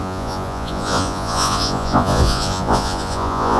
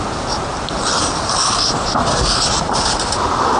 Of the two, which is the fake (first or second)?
first